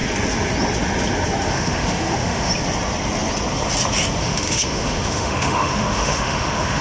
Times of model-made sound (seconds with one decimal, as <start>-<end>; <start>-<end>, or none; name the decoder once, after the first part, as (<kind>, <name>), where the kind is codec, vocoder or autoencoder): 1.5-2.5 (autoencoder, DAC-VAE); 4.2-6.8